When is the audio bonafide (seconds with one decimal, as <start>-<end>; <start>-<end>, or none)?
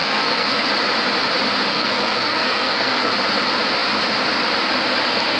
0.7-1.7; 3.1-5.4